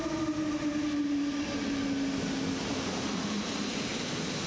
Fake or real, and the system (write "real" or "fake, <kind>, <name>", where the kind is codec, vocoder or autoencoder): real